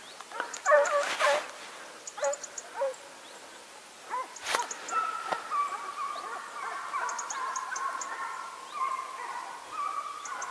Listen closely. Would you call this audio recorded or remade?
recorded